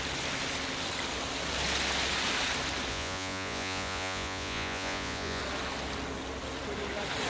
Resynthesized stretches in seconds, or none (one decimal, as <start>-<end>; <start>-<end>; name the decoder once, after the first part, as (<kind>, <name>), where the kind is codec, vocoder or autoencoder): 2.9-5.4 (vocoder, Vocos)